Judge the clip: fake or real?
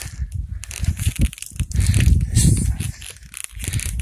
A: real